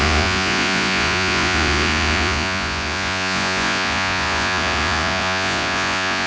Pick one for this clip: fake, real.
fake